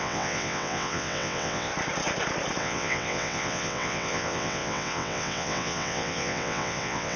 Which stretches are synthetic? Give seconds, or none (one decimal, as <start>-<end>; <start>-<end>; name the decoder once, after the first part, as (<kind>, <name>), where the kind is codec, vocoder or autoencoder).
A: 0.0-1.7 (vocoder, WaveNeXt); 2.6-7.2